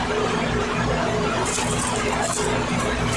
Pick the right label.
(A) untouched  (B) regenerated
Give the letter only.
A